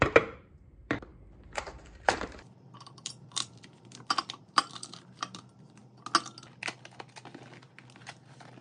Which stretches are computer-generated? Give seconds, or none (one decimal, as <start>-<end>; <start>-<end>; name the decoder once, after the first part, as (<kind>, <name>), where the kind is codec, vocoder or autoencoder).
0.0-5.8 (vocoder, BigVGAN v2); 8.0-8.6